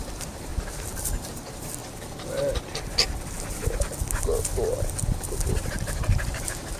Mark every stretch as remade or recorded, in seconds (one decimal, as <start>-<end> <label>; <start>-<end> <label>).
0.0-0.5 remade; 0.5-1.2 recorded; 1.2-1.8 remade; 1.8-5.5 recorded; 5.5-6.8 remade

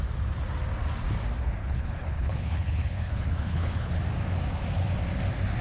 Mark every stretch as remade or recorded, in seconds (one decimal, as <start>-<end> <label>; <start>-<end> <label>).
0.0-1.6 recorded; 1.6-3.9 remade; 3.9-5.6 recorded

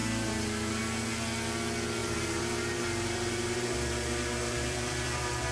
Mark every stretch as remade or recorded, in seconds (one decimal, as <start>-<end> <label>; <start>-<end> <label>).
0.0-0.8 remade; 0.8-2.0 recorded; 2.0-5.5 remade

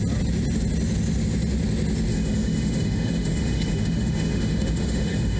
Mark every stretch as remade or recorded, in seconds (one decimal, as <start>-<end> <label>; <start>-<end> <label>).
0.0-2.1 recorded; 2.1-5.4 remade

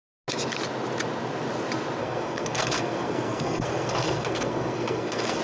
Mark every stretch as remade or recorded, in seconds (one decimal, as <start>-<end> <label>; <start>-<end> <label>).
0.0-2.0 recorded; 2.0-5.4 remade

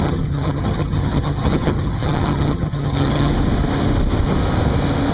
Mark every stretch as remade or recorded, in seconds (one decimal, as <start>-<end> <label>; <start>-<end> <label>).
0.0-3.3 remade; 3.3-5.1 recorded